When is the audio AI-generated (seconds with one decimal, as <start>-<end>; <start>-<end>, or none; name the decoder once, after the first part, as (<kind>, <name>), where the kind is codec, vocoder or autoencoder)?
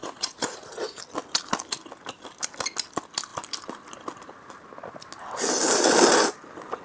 0.0-1.0 (vocoder, Vocos)